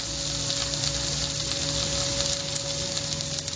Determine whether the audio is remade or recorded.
recorded